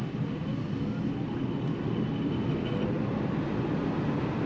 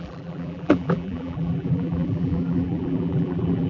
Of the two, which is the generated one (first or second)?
second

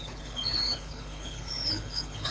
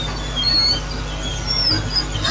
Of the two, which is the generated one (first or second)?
first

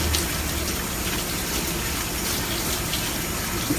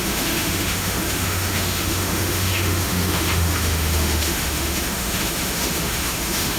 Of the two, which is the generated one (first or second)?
second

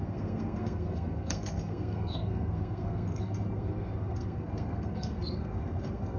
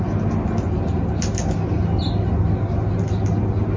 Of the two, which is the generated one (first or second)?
first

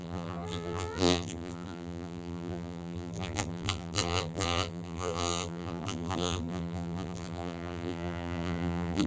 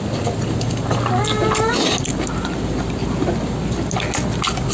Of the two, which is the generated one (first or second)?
first